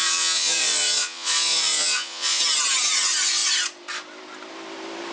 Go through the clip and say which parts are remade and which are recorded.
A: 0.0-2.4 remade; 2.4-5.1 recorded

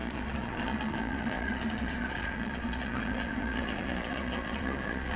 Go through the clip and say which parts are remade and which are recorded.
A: 0.0-5.2 remade

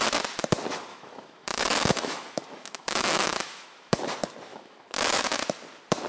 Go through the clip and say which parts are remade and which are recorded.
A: 0.0-0.9 recorded; 0.9-4.0 remade; 4.0-4.5 recorded; 4.5-5.4 remade; 5.4-6.1 recorded

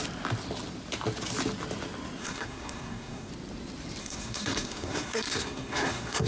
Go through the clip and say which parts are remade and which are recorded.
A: 0.0-2.2 recorded; 2.2-3.3 remade; 3.3-4.0 recorded; 4.0-6.3 remade

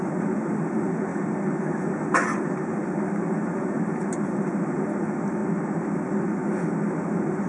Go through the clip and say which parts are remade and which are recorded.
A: 0.0-1.1 remade; 1.1-2.1 recorded; 2.1-5.4 remade; 5.4-6.0 recorded; 6.0-6.4 remade; 6.4-6.9 recorded; 6.9-7.5 remade